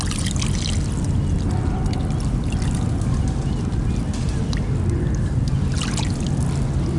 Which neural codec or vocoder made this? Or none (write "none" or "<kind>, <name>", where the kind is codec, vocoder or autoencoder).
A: none